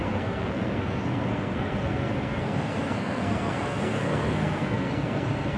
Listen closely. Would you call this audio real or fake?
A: fake